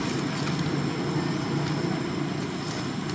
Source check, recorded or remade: recorded